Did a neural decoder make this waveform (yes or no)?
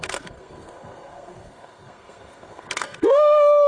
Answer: yes